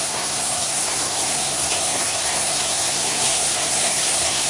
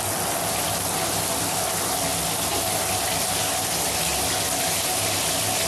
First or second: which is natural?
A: second